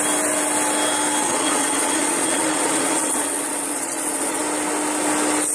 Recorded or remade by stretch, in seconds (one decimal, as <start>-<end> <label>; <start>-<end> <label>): 0.0-1.2 recorded; 1.2-4.4 remade; 4.4-5.5 recorded